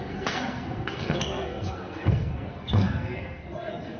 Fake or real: fake